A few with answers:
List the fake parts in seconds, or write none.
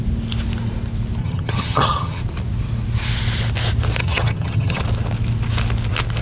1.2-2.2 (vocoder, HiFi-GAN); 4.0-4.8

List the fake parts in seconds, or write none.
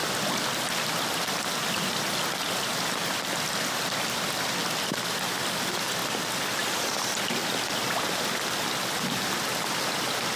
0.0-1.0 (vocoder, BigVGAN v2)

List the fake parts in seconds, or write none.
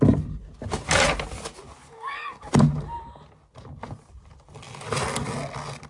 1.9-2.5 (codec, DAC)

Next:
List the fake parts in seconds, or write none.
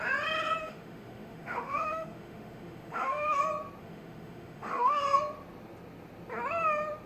0.6-3.4 (autoencoder, DAC-VAE); 3.8-5.0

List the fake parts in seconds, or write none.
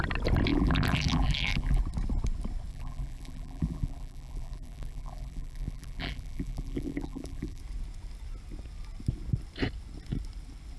0.5-1.8 (vocoder, BigVGAN v2); 2.7-7.6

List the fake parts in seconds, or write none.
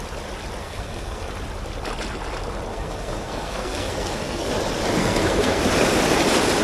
0.6-1.3 (codec, SNAC); 2.7-4.5; 5.0-5.6